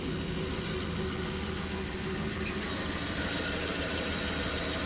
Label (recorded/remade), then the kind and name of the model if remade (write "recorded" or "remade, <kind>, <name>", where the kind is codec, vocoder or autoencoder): recorded